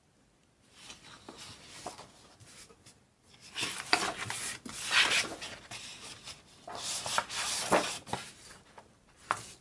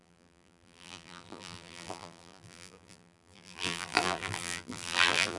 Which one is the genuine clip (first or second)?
first